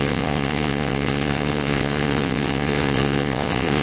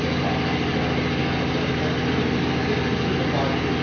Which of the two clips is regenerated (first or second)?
first